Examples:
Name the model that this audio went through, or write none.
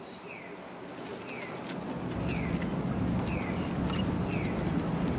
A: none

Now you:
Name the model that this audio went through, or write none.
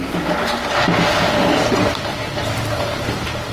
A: none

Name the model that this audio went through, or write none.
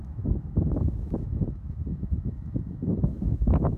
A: autoencoder, DAC-VAE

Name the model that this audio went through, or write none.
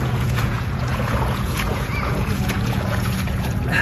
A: vocoder, Vocos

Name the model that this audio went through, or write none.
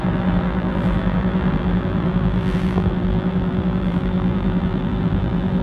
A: vocoder, BigVGAN v2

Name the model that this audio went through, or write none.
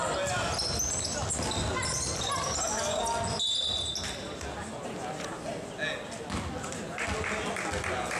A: none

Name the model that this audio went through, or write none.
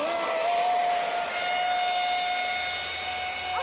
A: none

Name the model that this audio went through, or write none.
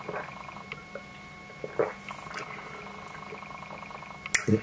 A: none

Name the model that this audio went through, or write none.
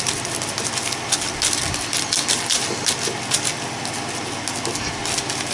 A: none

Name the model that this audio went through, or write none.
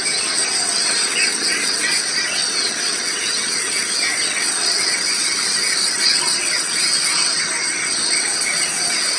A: vocoder, WaveNeXt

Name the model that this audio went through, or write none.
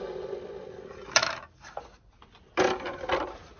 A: none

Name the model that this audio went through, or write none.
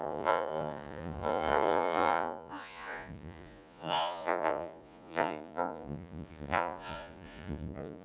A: vocoder, Vocos